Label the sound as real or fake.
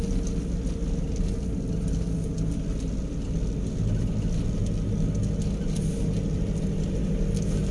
real